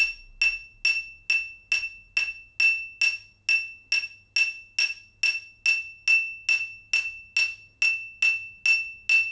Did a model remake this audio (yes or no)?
no